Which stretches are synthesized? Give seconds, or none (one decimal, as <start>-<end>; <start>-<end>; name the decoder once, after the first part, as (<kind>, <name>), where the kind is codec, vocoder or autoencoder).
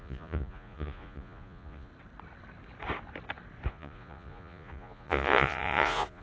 0.0-1.9 (vocoder, Vocos); 3.7-6.2